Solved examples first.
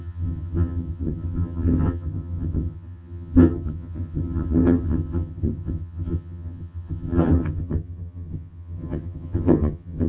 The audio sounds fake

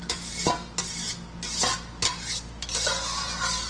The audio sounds real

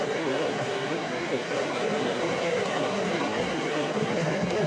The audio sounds fake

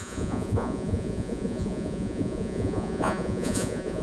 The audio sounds fake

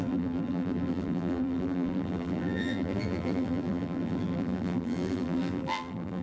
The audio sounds fake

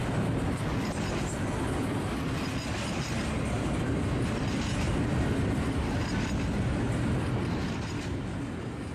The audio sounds real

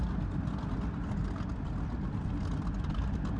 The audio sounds real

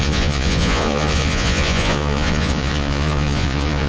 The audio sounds fake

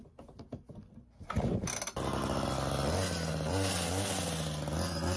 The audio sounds real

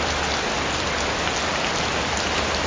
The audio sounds real